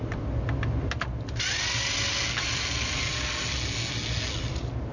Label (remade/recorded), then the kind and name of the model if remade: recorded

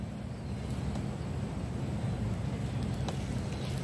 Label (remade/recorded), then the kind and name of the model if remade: recorded